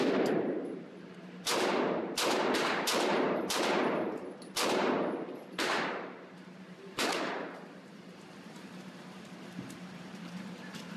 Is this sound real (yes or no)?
no